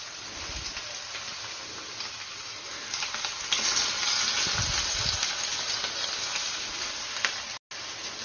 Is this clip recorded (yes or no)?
yes